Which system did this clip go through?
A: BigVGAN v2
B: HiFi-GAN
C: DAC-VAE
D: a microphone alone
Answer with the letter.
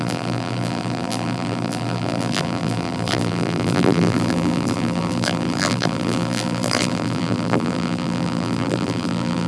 A